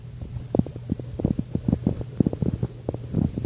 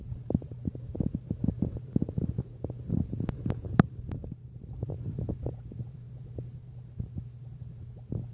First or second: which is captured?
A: first